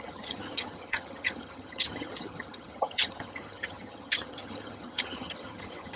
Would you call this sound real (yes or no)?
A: no